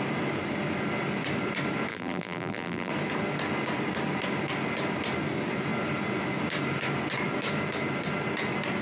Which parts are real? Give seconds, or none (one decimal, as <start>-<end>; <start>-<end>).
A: 0.0-1.9; 2.9-8.8